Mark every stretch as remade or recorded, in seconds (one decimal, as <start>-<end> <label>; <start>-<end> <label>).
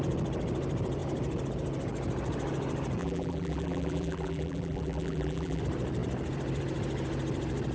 0.0-3.0 recorded; 3.0-5.6 remade; 5.6-7.7 recorded